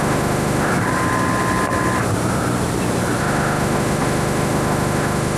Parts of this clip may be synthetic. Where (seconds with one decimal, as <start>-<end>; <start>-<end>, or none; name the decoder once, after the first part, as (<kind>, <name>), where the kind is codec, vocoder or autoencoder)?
0.0-0.7 (autoencoder, DAC-VAE); 3.2-5.4